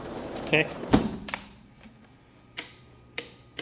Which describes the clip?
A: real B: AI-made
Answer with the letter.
B